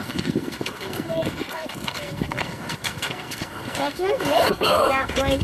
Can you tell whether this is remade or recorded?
remade